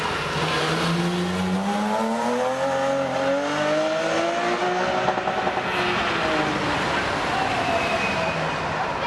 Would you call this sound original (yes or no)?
yes